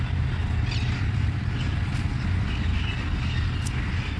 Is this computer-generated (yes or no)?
no